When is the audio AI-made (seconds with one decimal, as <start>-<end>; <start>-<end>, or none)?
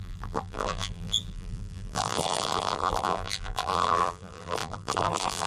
0.0-5.5